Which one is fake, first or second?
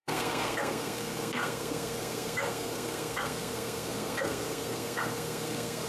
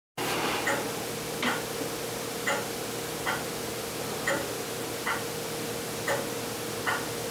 first